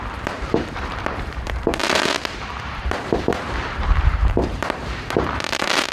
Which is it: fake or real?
fake